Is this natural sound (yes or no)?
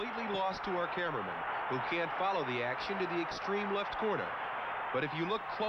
yes